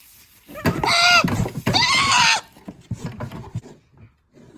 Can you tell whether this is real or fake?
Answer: real